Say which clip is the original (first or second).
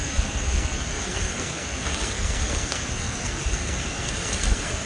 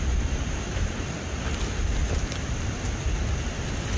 second